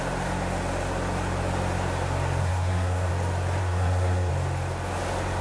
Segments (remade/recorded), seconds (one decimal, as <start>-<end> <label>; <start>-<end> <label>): 0.0-2.4 recorded; 2.4-3.1 remade; 3.1-3.6 recorded; 3.6-4.3 remade; 4.3-5.4 recorded